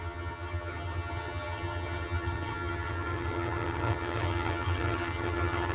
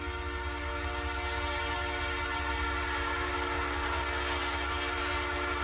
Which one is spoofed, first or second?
first